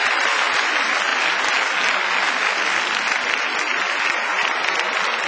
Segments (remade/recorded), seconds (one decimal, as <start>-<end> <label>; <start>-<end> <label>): 0.0-5.3 recorded